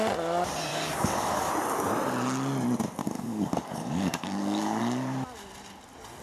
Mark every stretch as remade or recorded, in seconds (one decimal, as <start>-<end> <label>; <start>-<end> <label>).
0.0-0.7 recorded; 0.7-1.5 remade; 1.5-3.0 recorded; 3.0-4.8 remade; 4.8-6.2 recorded